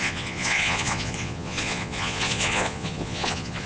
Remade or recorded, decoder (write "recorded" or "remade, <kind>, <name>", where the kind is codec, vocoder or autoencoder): remade, vocoder, Vocos